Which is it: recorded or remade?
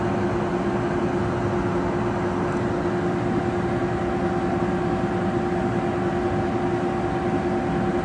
recorded